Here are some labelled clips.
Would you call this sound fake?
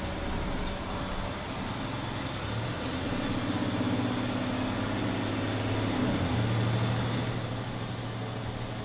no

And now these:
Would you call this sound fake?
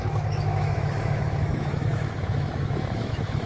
yes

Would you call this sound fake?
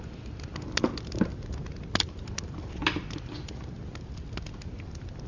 no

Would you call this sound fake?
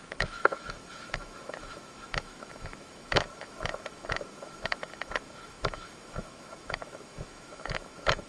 yes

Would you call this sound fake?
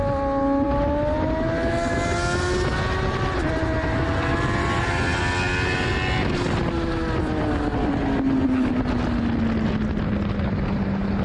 no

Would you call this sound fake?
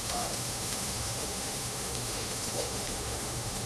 yes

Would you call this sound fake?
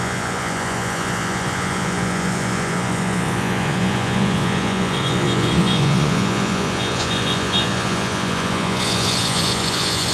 yes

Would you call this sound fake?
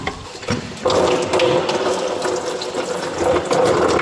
yes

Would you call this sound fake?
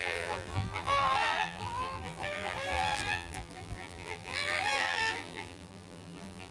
yes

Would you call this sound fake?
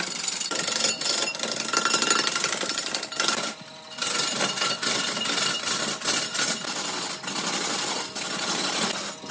no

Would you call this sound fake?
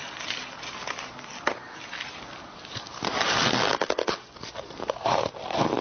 no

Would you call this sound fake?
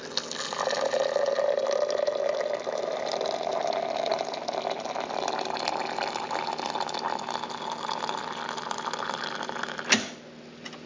no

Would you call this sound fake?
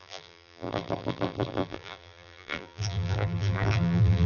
yes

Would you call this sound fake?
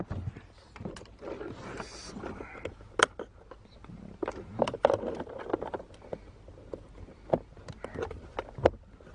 no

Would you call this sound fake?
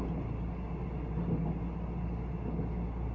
no